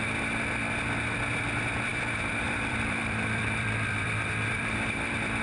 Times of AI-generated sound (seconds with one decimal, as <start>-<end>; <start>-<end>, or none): 1.9-5.4